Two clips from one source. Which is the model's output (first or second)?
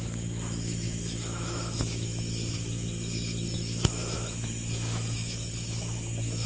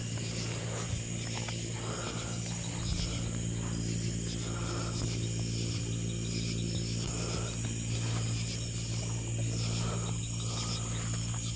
first